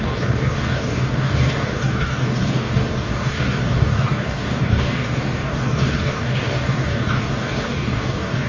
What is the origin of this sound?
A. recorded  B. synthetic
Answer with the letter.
B